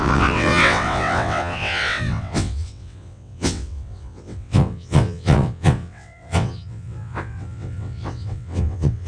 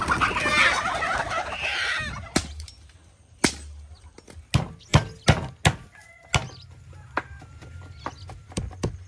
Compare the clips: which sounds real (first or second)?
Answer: second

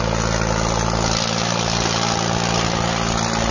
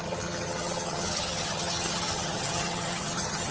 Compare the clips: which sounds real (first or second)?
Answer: first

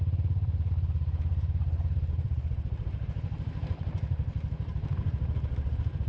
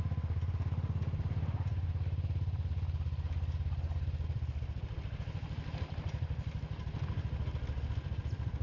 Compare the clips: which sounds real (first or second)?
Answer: second